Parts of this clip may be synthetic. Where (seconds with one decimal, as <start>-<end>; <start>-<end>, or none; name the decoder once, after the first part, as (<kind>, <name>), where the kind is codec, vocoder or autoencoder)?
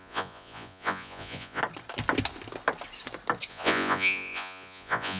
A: 0.0-1.6 (vocoder, Vocos); 3.5-5.2